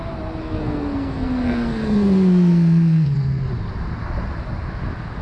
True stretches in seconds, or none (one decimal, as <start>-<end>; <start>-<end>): 0.0-0.4; 3.5-5.2